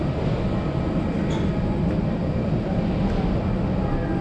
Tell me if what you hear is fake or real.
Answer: real